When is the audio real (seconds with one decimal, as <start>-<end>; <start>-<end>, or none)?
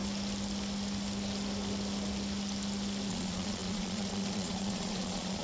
0.0-3.1